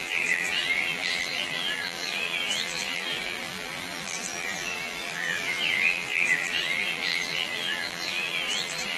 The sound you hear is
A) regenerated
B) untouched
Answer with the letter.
A